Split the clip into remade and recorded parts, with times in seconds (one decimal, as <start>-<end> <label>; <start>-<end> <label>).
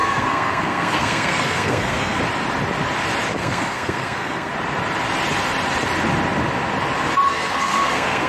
0.0-2.2 remade; 2.2-3.4 recorded; 3.4-4.5 remade; 4.5-7.3 recorded; 7.3-8.3 remade